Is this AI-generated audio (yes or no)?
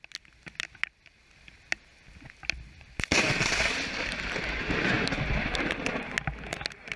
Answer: no